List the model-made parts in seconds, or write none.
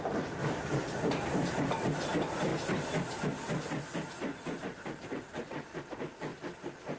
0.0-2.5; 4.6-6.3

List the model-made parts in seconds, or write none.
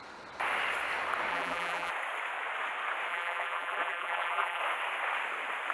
1.3-1.9; 3.1-4.6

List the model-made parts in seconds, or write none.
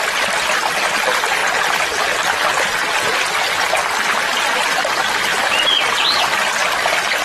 0.0-1.4; 3.8-7.2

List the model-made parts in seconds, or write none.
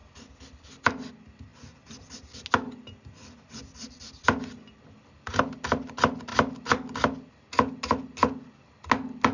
none